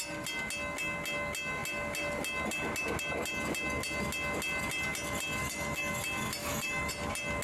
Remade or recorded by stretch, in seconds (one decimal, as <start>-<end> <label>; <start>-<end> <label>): 0.0-5.4 recorded; 5.4-5.9 remade; 5.9-6.4 recorded; 6.4-6.9 remade; 6.9-7.4 recorded